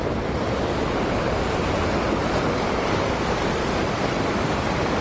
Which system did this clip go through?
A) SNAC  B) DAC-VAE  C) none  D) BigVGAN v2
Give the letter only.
C